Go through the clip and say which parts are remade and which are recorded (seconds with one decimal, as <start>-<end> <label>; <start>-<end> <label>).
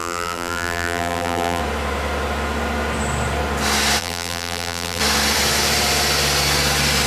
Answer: 0.0-1.6 remade; 1.6-4.0 recorded; 4.0-5.0 remade; 5.0-7.1 recorded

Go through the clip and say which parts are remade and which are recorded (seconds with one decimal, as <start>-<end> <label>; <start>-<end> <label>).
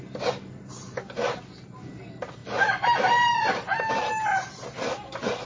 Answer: 0.0-2.4 recorded; 2.4-5.5 remade